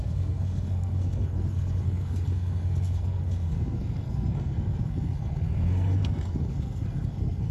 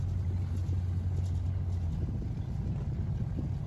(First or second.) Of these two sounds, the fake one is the first